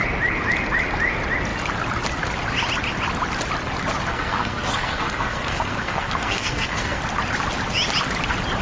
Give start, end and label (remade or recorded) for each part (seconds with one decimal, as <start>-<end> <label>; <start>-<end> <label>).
0.0-4.1 recorded; 4.1-7.0 remade; 7.0-8.6 recorded